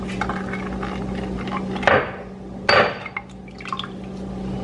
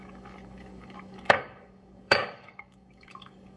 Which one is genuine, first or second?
first